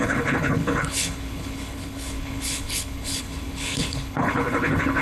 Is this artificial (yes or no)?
yes